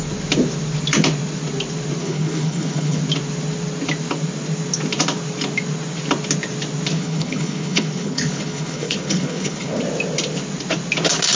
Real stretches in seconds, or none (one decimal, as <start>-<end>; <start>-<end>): 0.0-2.0; 3.0-6.9; 9.8-11.3